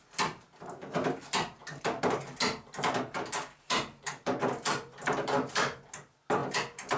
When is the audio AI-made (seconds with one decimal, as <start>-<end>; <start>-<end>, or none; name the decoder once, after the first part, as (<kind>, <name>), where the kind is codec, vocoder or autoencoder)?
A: 1.6-5.8 (vocoder, BigVGAN v2)